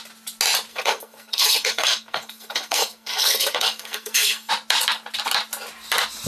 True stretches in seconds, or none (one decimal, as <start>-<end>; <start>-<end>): 0.0-0.7; 4.5-6.3